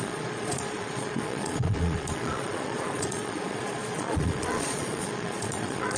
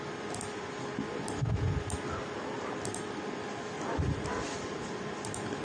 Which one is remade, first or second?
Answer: first